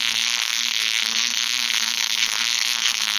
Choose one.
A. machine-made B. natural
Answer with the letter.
A